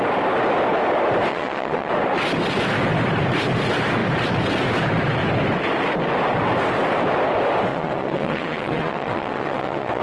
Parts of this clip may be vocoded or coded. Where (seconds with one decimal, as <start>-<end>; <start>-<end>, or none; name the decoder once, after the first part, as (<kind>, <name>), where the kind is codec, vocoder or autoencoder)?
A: 1.3-1.9 (vocoder, WaveNeXt); 7.7-10.0